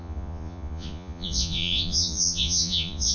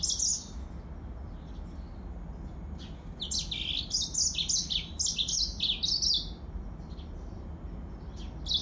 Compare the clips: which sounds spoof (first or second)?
first